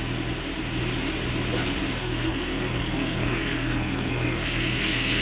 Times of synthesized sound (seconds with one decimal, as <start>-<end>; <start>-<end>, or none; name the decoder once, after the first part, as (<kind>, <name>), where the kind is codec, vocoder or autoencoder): 2.0-5.2 (codec, SNAC)